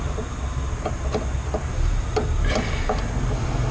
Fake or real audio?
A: real